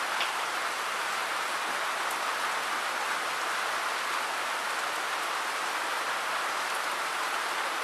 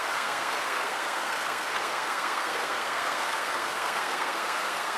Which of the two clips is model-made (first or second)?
second